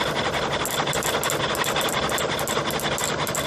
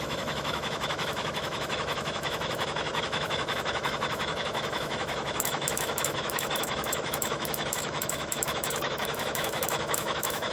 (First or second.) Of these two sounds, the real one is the first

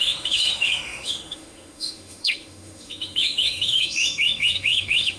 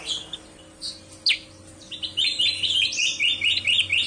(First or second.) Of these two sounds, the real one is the second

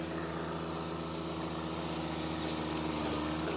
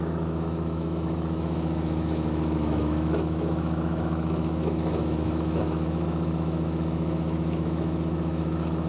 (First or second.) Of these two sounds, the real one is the first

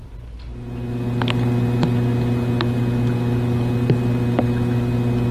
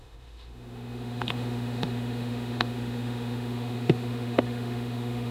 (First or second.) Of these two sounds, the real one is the first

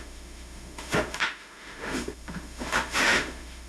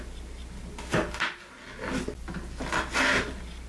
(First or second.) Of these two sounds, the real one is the second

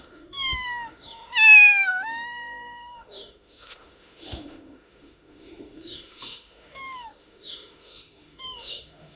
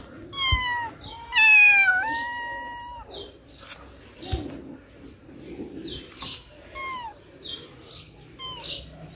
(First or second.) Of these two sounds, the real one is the second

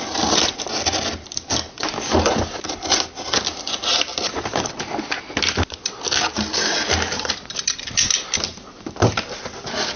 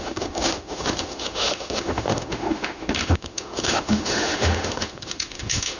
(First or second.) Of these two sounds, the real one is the first